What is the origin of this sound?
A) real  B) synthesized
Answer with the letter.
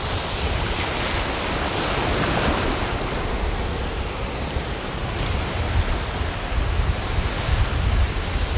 A